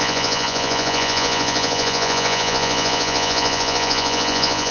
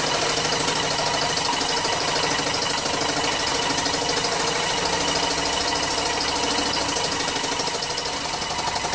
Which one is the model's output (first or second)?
first